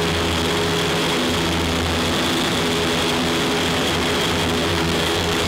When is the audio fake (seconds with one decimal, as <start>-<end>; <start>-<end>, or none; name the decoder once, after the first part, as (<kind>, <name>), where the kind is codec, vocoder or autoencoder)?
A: 4.7-5.5 (codec, DAC)